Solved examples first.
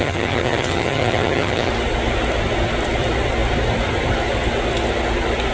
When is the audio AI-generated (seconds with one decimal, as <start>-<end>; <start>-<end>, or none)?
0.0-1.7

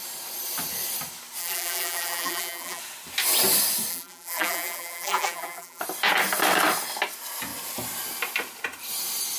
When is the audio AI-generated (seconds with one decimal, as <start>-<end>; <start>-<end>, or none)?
1.4-2.8; 3.9-5.8

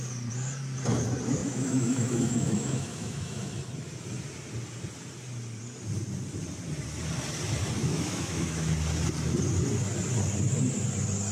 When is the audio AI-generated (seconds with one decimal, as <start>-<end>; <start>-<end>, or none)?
1.4-3.5; 7.8-8.7